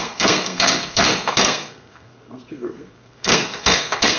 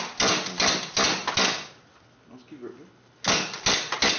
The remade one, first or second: first